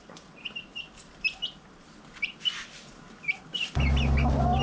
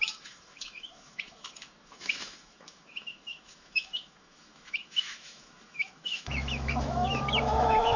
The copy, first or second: second